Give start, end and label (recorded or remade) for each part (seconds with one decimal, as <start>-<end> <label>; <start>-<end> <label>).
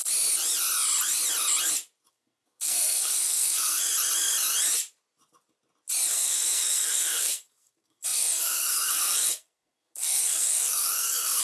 0.0-2.1 recorded; 2.1-3.8 remade; 3.8-6.1 recorded; 6.1-11.4 remade